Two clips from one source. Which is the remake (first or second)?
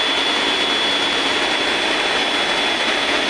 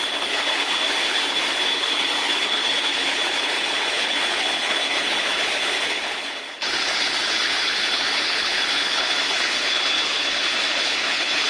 second